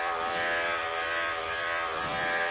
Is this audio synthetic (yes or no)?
yes